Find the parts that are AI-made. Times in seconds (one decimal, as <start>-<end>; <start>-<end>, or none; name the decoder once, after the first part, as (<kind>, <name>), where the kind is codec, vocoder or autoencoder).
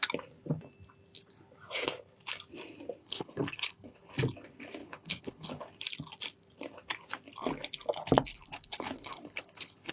3.0-4.1 (codec, HILCodec); 4.8-5.6; 8.3-9.9